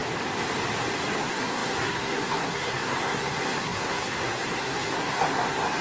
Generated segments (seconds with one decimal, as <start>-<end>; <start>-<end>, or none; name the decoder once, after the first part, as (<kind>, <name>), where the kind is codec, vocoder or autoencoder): 1.2-5.8 (codec, SNAC)